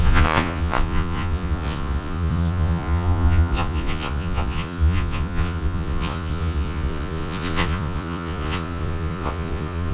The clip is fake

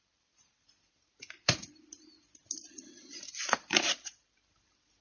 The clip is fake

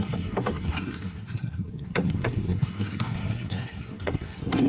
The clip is fake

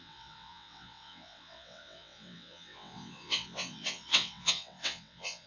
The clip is fake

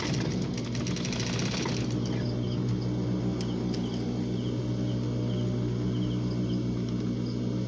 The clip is real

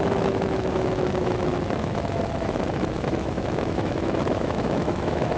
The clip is fake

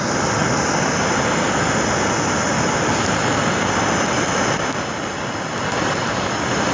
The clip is real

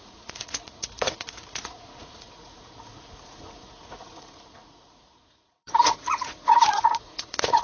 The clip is fake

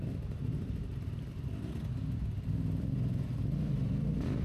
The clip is fake